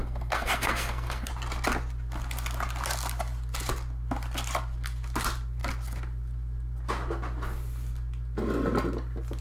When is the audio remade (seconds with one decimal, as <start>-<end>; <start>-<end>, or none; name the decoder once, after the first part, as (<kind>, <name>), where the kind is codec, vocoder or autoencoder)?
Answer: 0.0-1.3 (codec, SNAC)